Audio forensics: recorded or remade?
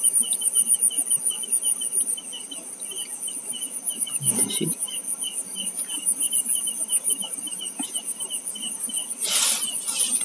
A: recorded